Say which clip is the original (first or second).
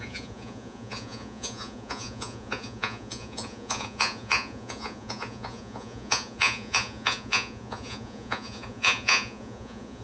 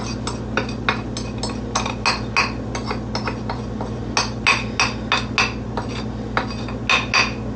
second